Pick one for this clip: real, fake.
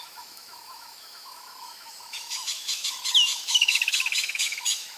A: fake